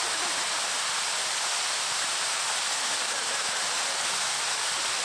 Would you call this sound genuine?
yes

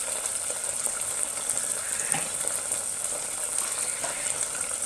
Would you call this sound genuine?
yes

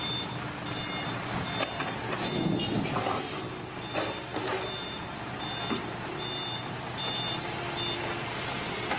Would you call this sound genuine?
yes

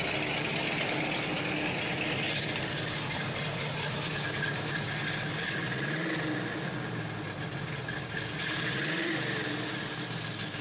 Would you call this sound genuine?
yes